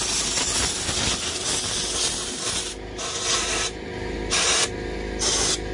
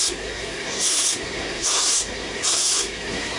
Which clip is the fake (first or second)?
second